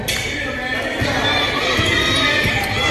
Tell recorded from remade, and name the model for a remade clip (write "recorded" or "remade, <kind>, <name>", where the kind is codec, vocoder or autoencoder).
recorded